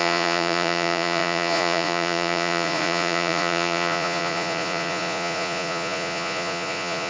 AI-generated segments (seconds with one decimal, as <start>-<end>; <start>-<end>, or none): 0.0-7.1